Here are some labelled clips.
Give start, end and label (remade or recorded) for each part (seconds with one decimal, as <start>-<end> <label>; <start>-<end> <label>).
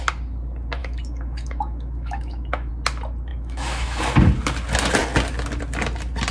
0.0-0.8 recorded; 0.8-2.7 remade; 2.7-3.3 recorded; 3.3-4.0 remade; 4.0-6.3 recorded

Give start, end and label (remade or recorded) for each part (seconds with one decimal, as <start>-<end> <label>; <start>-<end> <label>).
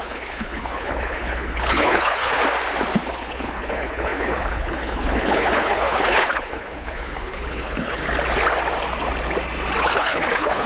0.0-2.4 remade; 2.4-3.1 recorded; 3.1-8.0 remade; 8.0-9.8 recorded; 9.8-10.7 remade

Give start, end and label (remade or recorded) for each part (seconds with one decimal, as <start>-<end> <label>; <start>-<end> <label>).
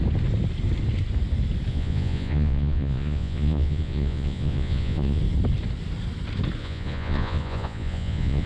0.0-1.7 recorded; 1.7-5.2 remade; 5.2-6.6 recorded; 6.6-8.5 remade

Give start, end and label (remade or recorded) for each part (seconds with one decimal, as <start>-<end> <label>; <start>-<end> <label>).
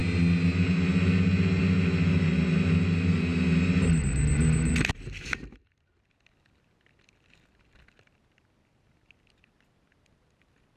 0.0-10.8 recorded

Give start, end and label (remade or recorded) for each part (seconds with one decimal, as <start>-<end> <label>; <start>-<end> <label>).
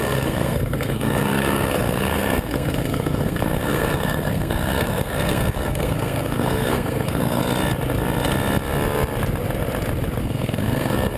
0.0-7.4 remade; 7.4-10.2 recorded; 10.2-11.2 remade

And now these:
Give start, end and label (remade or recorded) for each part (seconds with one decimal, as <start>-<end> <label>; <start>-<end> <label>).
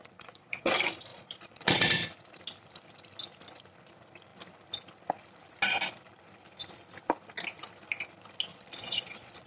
0.0-0.7 remade; 0.7-1.1 recorded; 1.1-1.9 remade; 1.9-8.5 recorded; 8.5-9.5 remade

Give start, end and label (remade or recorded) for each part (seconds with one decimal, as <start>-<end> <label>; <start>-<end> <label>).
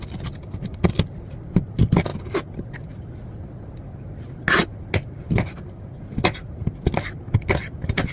0.0-8.1 recorded